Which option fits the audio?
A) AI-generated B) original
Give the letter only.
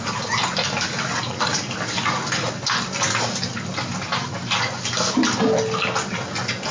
B